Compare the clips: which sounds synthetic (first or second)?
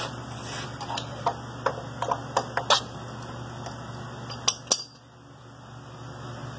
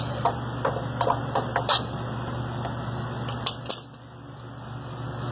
second